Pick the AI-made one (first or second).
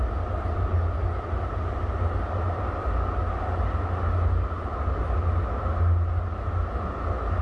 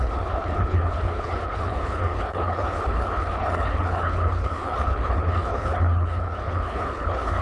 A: second